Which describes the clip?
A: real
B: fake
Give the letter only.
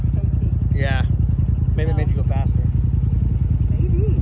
A